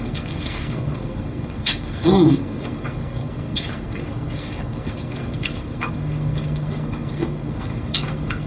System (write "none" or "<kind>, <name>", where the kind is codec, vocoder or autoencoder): codec, SNAC